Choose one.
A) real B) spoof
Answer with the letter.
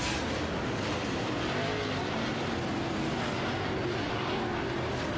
A